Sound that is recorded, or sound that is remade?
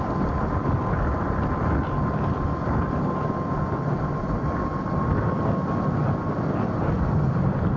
recorded